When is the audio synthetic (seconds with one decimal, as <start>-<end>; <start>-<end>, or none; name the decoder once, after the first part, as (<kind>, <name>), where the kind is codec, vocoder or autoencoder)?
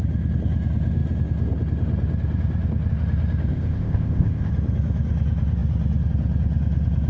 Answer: 3.5-4.5 (codec, ZipCodec)